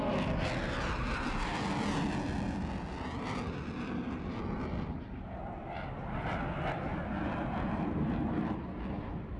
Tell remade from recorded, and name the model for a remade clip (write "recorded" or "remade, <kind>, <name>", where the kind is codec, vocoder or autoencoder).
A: recorded